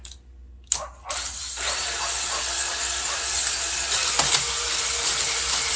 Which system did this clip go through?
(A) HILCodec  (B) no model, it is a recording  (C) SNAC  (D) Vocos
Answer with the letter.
B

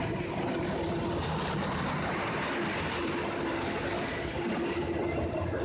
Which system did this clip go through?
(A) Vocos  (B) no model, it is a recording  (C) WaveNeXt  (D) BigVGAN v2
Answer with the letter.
B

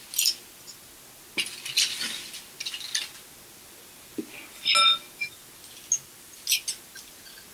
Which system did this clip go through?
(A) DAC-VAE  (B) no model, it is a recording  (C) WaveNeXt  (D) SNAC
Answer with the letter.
B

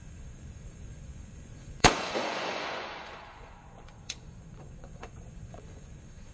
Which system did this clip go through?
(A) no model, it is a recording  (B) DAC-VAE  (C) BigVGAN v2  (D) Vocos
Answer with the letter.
D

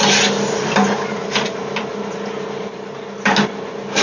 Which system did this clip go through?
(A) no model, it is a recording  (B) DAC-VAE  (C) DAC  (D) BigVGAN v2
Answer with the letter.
A